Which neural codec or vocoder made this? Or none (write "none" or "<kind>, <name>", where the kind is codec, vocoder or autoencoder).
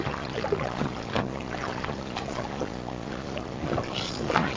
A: vocoder, Vocos